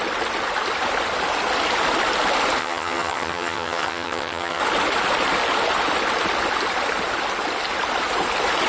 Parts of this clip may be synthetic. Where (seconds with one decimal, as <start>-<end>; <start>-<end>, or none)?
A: 2.6-4.6